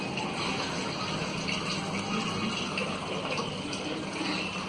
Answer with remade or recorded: recorded